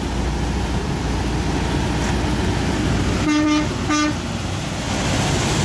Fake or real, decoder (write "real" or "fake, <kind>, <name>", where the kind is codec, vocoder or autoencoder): real